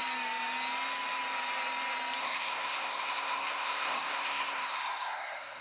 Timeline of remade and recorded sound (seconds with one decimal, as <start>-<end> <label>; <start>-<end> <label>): 0.0-2.2 recorded; 2.2-5.6 remade